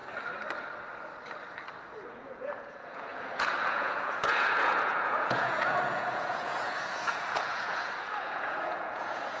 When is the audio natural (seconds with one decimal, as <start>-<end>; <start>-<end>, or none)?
0.0-2.1